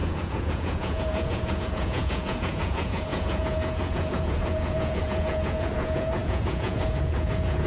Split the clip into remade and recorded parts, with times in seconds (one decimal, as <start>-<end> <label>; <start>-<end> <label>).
0.0-7.7 remade